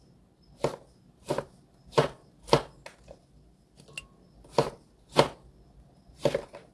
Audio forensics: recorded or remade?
recorded